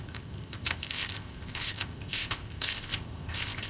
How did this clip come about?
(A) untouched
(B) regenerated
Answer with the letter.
B